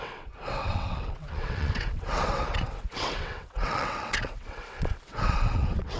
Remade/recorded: remade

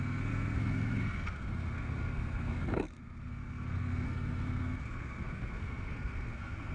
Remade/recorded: remade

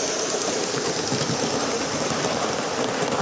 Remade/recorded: recorded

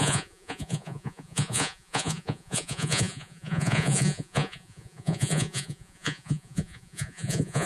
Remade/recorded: remade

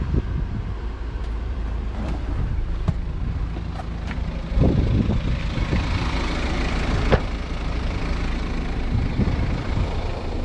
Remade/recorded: remade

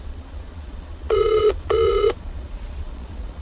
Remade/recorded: remade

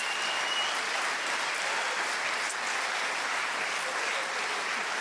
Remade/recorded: recorded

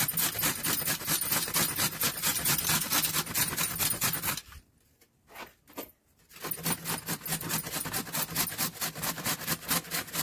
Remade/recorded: recorded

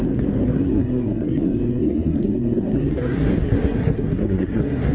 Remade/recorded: remade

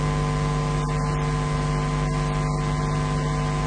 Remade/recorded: recorded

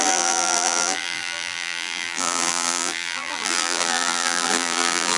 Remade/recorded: remade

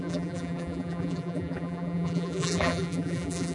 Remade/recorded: remade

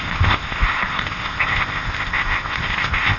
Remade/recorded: remade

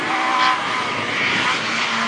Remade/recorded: recorded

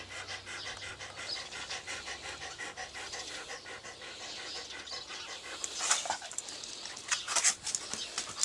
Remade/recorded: recorded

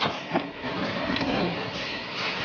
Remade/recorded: remade